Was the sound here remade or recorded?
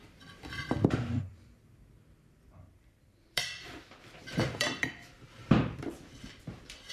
remade